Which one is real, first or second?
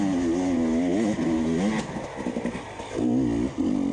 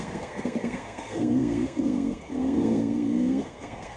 first